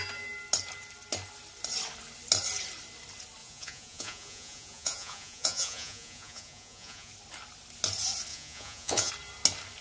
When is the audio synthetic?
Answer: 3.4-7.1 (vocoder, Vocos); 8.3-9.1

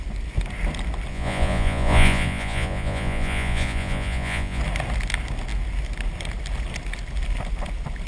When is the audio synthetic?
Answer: 1.1-4.6 (vocoder, Vocos)

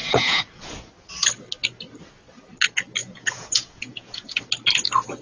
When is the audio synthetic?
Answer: 0.0-0.7 (vocoder, Vocos); 3.0-4.4

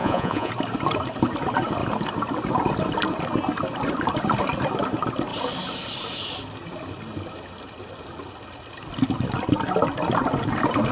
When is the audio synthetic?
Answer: 0.0-0.5 (vocoder, Vocos)

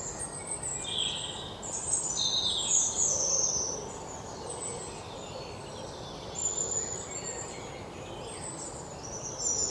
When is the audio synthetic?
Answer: none

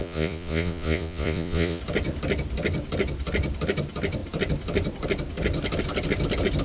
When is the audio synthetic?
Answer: 0.0-1.8 (vocoder, Vocos)